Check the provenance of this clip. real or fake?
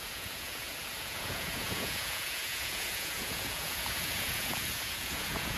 fake